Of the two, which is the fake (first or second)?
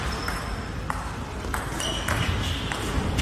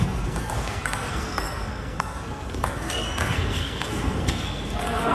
second